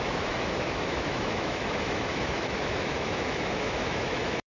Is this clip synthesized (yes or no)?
yes